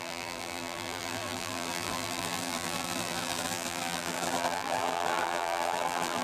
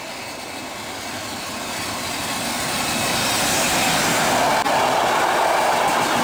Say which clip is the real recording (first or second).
second